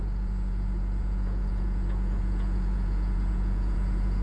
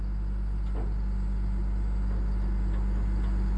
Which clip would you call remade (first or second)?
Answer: first